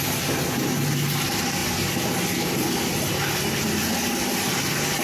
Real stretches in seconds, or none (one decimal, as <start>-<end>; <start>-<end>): 0.0-5.0